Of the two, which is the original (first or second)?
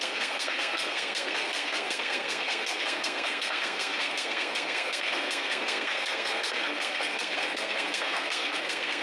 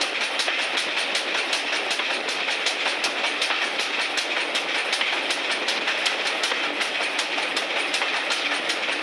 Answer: second